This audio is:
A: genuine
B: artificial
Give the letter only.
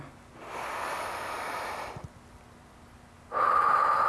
A